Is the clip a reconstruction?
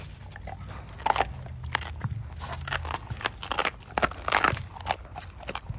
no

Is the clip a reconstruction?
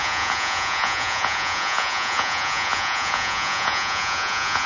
yes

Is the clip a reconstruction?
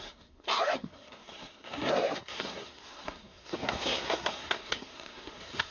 yes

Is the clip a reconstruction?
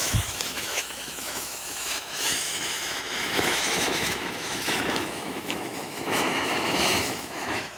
yes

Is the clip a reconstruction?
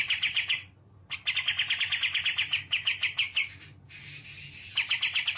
no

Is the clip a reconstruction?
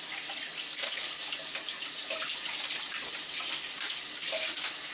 no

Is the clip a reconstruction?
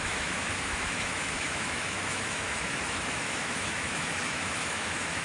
yes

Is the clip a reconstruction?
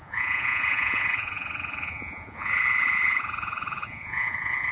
yes